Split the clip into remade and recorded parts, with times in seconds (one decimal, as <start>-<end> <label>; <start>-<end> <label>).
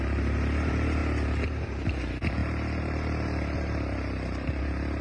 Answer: 0.0-1.0 remade; 1.0-1.8 recorded; 1.8-5.0 remade